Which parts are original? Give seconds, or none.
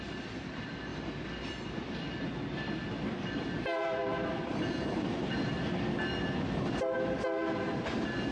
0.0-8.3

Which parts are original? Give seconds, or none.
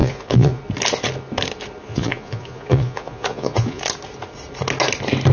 0.6-1.9; 3.8-5.3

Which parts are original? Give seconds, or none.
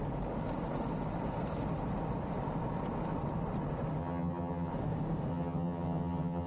0.0-4.0; 4.7-5.3